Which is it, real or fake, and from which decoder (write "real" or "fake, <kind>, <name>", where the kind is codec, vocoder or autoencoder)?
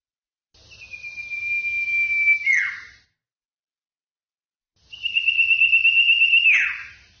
real